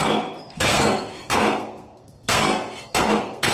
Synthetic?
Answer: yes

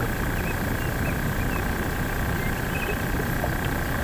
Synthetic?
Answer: yes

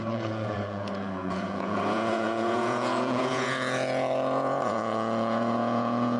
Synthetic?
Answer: yes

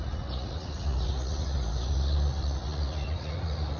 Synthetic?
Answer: yes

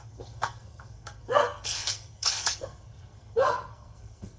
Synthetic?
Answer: yes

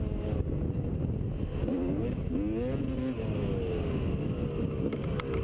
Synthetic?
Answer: no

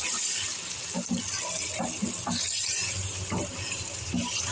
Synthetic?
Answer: no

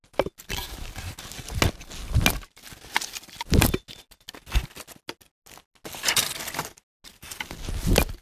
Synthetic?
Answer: no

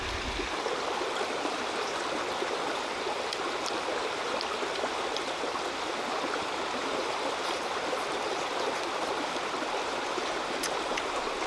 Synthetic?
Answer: no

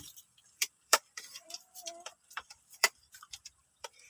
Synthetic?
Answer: yes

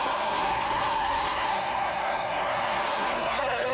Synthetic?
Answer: yes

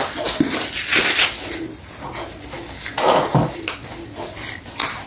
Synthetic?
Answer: no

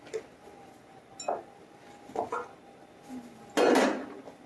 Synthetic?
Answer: no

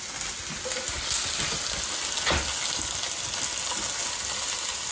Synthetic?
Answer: no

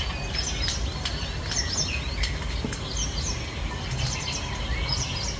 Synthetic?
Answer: no